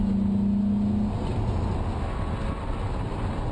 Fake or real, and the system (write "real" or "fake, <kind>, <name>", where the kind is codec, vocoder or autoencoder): real